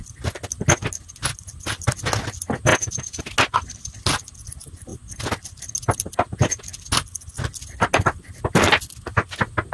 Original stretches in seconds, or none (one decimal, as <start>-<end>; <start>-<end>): 0.0-2.7; 3.2-9.7